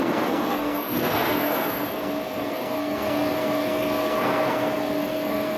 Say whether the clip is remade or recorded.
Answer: remade